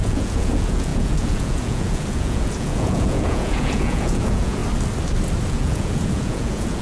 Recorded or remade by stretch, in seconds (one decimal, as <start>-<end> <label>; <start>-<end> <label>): 0.0-4.6 remade; 4.6-5.5 recorded; 5.5-6.8 remade